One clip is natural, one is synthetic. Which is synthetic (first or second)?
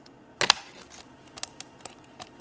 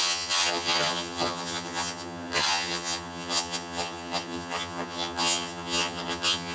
second